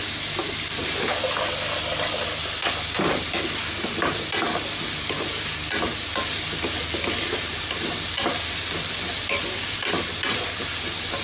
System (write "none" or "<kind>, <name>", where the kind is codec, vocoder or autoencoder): none